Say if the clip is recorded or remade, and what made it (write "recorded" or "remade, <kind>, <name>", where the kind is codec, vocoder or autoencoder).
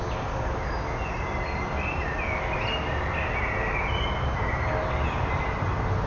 recorded